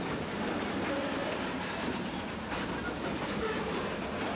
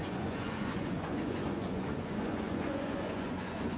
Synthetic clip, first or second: second